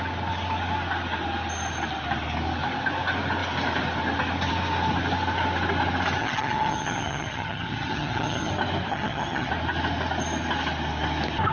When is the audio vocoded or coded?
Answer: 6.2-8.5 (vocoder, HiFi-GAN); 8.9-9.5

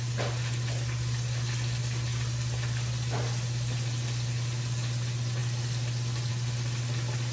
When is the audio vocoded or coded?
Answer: none

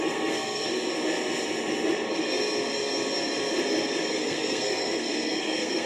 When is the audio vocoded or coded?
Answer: 0.0-0.6 (codec, SNAC); 4.1-5.9

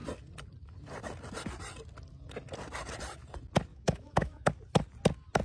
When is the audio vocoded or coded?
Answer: 3.7-4.5 (autoencoder, DAC-VAE)